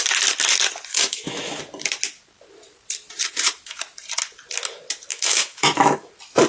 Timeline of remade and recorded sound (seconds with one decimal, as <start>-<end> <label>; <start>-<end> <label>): 0.0-0.9 recorded; 0.9-1.6 remade; 1.6-5.1 recorded; 5.1-6.1 remade; 6.1-6.5 recorded